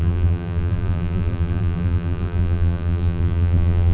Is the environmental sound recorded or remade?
remade